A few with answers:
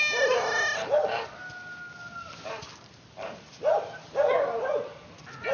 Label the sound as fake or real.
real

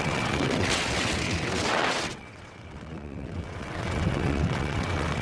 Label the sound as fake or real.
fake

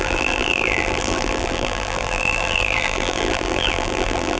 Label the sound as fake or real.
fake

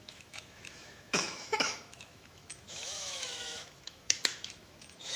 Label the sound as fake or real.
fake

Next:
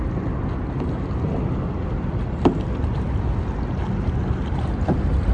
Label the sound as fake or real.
real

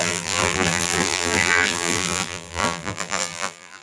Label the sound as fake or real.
fake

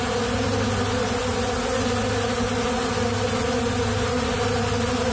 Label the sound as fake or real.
real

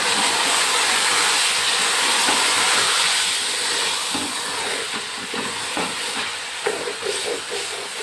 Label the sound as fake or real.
fake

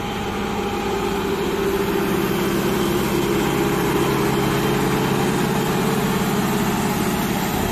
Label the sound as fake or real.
real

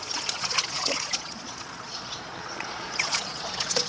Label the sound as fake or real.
fake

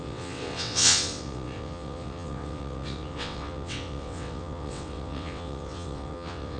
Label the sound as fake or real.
fake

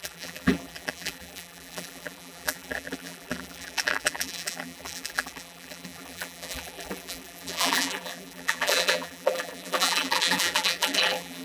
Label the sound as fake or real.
fake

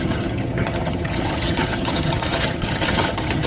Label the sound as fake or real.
fake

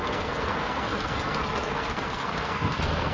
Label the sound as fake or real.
fake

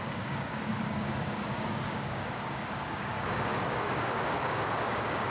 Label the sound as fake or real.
fake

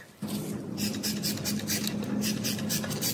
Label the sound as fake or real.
real